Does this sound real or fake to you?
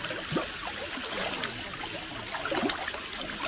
real